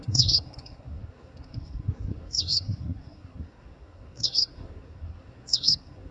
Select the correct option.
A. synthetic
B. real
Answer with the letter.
A